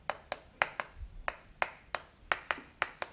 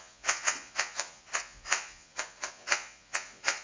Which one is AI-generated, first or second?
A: second